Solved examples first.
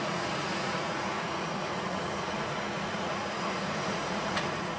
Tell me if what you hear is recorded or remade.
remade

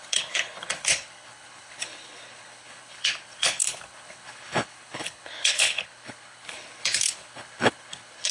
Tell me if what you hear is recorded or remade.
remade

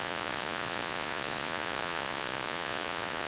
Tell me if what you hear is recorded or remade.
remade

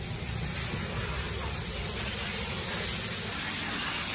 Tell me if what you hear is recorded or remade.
recorded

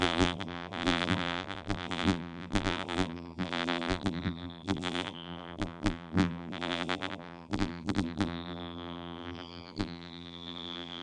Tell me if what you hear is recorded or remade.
remade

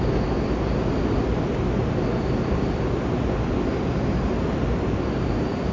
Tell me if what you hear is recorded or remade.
recorded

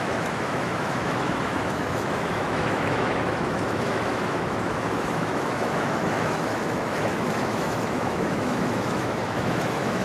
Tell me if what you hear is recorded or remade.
remade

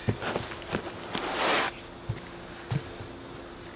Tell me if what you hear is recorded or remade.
recorded